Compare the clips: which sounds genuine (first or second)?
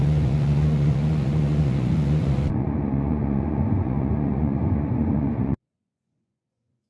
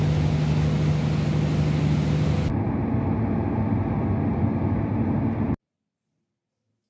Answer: second